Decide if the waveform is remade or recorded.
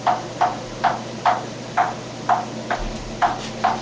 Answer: recorded